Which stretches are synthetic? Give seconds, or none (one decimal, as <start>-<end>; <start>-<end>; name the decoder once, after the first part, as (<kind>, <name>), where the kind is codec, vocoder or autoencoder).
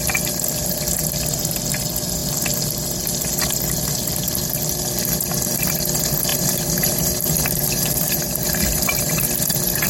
6.3-9.2 (vocoder, BigVGAN v2)